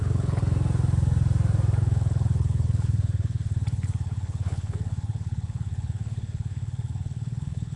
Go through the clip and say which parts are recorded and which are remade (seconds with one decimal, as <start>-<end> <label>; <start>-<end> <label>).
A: 0.0-0.4 remade; 0.4-1.8 recorded; 1.8-7.8 remade